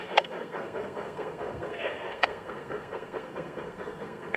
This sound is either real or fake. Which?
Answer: fake